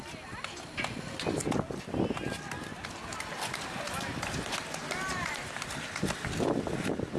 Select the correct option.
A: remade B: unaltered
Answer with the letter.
B